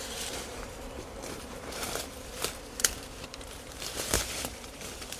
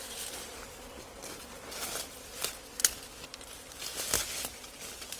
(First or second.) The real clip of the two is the second